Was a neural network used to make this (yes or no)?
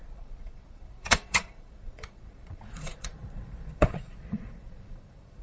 yes